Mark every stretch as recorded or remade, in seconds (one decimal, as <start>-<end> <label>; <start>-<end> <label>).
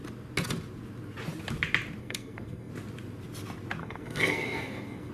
0.0-2.0 recorded; 2.0-2.7 remade; 2.7-3.8 recorded; 3.8-5.1 remade